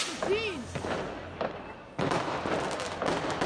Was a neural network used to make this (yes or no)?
no